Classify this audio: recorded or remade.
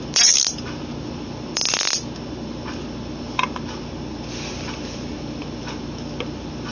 recorded